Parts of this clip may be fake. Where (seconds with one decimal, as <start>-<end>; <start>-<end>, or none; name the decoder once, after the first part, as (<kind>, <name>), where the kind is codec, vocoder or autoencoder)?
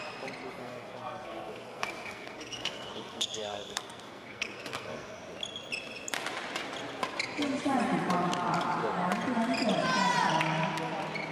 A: 0.6-5.2 (codec, SNAC)